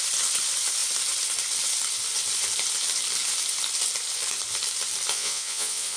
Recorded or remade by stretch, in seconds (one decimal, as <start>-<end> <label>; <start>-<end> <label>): 0.0-5.1 recorded; 5.1-6.0 remade

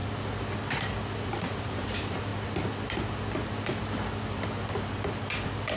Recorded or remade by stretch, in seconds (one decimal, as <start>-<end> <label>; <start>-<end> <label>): 0.0-1.3 recorded; 1.3-2.3 remade; 2.3-5.8 recorded

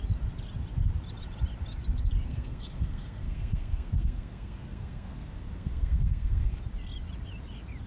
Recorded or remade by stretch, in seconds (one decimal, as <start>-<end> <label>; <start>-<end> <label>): 0.0-2.3 recorded; 2.3-6.6 remade; 6.6-7.9 recorded

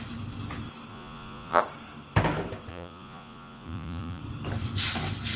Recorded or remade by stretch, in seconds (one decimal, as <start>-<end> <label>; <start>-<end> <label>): 0.0-0.9 recorded; 0.9-1.6 remade; 1.6-2.7 recorded; 2.7-4.2 remade; 4.2-5.4 recorded

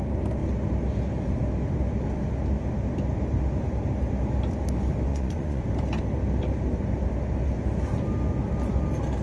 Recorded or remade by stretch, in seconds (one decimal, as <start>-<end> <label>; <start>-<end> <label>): 0.0-5.1 recorded; 5.1-5.6 remade; 5.6-9.2 recorded